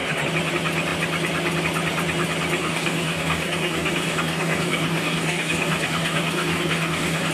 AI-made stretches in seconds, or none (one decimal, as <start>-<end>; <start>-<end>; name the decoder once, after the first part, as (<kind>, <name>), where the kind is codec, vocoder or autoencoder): 2.6-7.3 (codec, DAC)